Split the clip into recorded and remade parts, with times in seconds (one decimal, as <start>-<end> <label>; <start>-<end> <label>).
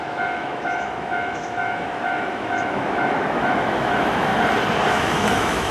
0.0-4.3 remade; 4.3-4.9 recorded; 4.9-5.7 remade